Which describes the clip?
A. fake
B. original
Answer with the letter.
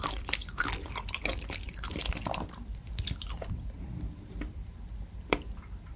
A